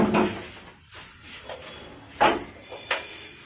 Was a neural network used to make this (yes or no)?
no